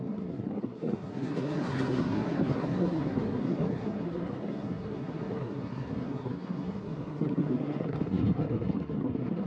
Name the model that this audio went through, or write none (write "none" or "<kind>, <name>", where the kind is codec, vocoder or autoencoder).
codec, SNAC